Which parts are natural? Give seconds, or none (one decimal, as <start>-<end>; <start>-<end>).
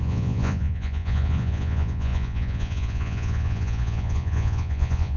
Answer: none